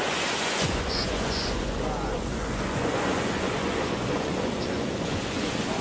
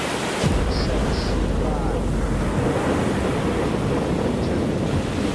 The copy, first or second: first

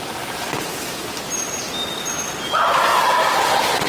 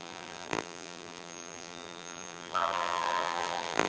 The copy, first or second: second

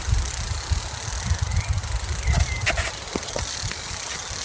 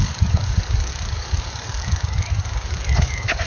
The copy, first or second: second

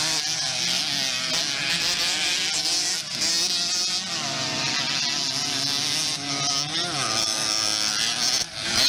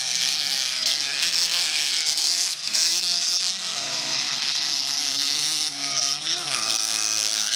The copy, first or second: second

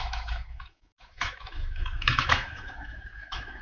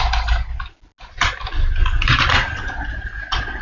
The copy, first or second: first